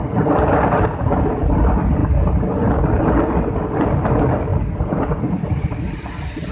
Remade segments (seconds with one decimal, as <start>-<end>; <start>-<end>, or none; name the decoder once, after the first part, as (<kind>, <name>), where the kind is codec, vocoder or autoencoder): none